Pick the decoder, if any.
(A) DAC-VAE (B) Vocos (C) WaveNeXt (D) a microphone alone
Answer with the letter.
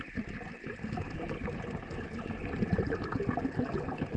D